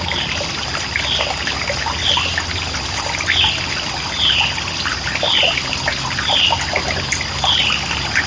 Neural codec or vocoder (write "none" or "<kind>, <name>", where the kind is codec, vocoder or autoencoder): none